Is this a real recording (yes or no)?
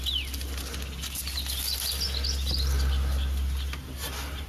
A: yes